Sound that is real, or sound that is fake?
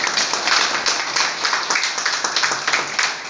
real